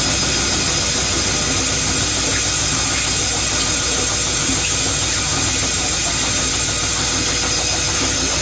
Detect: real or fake real